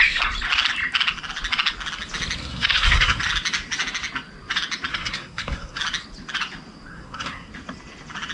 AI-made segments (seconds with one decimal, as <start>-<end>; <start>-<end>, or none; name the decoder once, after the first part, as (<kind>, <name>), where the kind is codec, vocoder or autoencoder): 2.4-3.2 (codec, SNAC); 4.9-5.8; 6.9-7.5